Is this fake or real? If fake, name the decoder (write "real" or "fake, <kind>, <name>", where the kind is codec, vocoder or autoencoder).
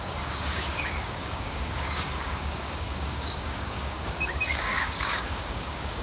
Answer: fake, codec, DAC